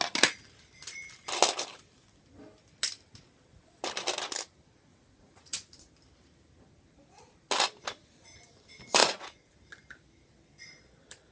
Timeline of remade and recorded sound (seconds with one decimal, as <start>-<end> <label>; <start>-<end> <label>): 0.0-4.9 recorded; 4.9-5.9 remade; 5.9-9.0 recorded; 9.0-9.5 remade; 9.5-11.3 recorded